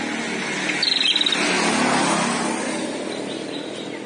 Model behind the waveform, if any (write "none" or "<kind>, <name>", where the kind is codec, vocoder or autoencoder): none